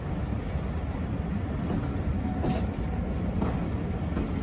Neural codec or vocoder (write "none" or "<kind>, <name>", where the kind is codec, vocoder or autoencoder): none